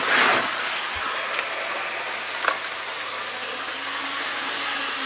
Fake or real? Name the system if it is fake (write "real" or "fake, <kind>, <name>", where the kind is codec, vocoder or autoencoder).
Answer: real